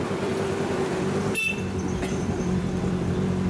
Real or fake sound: fake